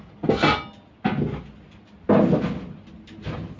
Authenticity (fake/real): real